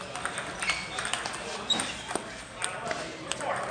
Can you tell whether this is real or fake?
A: real